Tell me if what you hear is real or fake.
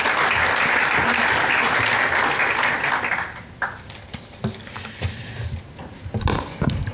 real